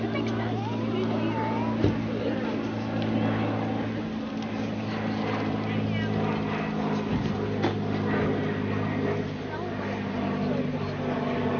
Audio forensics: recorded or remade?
recorded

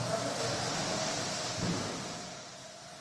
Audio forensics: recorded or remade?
recorded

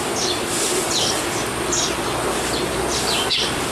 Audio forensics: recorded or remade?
recorded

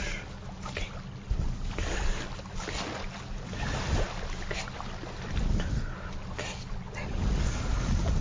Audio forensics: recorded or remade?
recorded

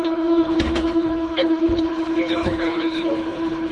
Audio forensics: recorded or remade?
remade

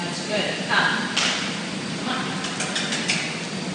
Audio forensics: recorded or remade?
recorded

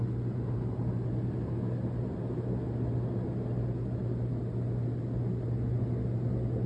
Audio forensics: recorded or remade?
recorded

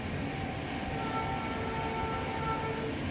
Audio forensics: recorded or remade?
recorded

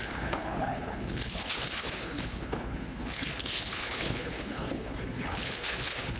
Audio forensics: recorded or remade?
remade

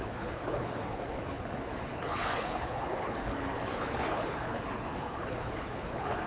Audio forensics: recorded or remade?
remade